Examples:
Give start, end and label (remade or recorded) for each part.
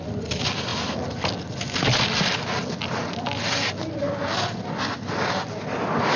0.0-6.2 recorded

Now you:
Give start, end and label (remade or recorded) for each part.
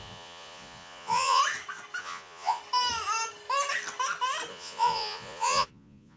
0.0-1.4 remade; 1.4-2.0 recorded; 2.0-2.6 remade; 2.6-4.5 recorded; 4.5-6.2 remade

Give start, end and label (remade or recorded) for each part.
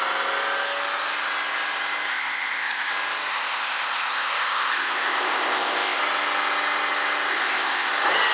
0.0-2.1 recorded; 2.1-2.9 remade; 2.9-3.3 recorded; 3.3-6.0 remade; 6.0-7.3 recorded; 7.3-7.9 remade; 7.9-8.3 recorded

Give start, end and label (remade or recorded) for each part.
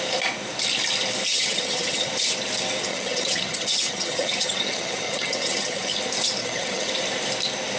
0.0-1.3 recorded; 1.3-2.1 remade; 2.1-2.9 recorded; 2.9-6.0 remade; 6.0-6.4 recorded; 6.4-6.9 remade; 6.9-7.8 recorded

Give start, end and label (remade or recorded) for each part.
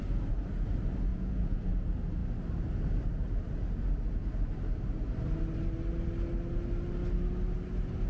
0.0-1.1 recorded; 1.1-1.7 remade; 1.7-8.1 recorded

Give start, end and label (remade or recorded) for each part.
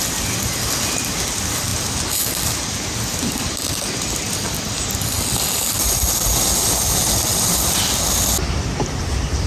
0.0-9.5 recorded